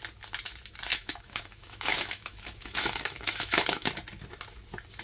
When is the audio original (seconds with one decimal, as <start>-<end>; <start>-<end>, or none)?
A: 0.0-0.9; 3.9-5.0